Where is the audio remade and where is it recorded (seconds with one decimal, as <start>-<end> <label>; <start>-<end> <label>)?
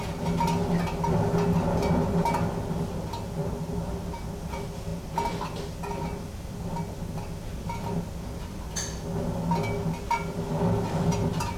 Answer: 0.0-3.4 recorded; 3.4-4.2 remade; 4.2-11.6 recorded